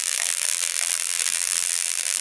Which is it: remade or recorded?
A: remade